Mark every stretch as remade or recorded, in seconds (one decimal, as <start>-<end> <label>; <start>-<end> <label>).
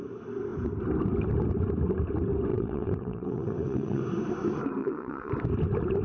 0.0-2.5 recorded; 2.5-4.0 remade; 4.0-4.8 recorded; 4.8-5.3 remade; 5.3-6.0 recorded